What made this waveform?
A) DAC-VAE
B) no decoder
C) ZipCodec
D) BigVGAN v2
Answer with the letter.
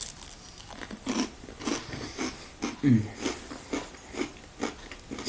B